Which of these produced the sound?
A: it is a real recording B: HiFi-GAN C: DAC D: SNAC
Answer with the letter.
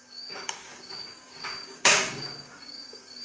C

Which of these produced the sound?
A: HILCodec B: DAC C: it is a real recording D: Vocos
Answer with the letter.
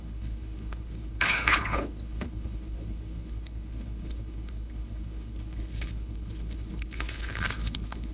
A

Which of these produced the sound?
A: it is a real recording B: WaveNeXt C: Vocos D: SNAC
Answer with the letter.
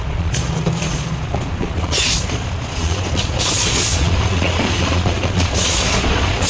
C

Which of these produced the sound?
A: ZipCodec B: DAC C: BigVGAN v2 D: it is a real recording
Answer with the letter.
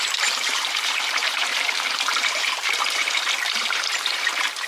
C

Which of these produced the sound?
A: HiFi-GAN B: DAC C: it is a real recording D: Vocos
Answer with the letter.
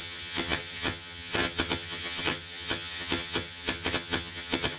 A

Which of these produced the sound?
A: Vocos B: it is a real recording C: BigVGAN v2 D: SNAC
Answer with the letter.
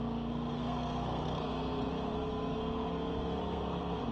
D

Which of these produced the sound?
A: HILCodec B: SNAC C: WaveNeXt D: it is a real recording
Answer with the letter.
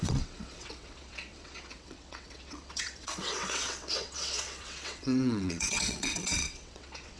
C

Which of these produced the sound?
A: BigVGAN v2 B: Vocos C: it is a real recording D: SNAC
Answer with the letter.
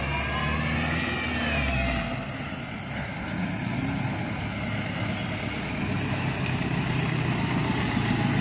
C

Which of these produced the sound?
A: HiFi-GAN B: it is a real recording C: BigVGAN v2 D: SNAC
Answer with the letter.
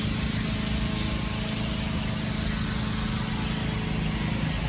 B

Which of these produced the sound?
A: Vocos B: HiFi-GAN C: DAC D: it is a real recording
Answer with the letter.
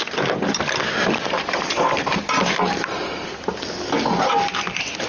D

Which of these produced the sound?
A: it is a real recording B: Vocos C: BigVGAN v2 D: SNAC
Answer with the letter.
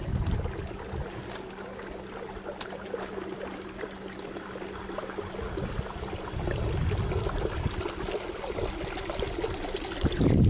A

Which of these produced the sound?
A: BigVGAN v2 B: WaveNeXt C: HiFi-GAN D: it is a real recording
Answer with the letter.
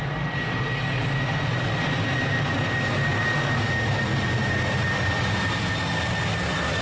D